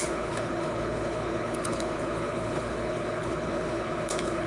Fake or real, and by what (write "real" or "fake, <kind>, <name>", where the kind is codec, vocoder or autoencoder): fake, codec, HILCodec